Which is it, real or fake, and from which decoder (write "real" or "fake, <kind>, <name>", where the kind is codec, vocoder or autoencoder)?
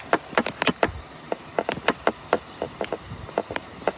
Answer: real